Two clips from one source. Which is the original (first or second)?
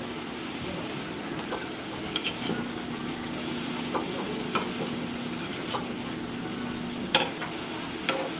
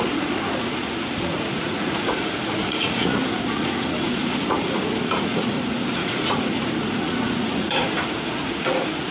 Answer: first